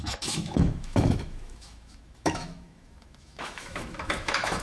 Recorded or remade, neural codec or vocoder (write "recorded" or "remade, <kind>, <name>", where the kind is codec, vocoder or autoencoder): remade, autoencoder, DAC-VAE